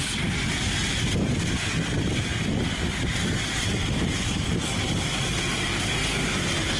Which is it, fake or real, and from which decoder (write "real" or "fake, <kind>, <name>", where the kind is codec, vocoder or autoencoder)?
fake, vocoder, BigVGAN v2